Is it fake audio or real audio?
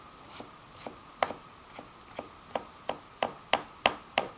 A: real